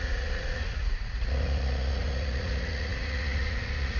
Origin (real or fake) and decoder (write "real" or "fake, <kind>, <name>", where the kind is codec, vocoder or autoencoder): fake, vocoder, Vocos